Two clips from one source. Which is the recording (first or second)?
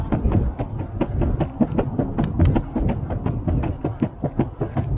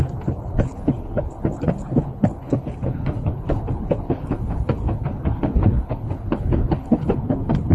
first